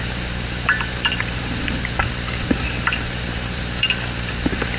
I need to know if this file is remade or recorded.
remade